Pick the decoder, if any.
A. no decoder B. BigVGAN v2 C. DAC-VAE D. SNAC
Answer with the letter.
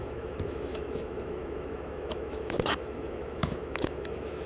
C